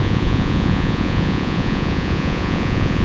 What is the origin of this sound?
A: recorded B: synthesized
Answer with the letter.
B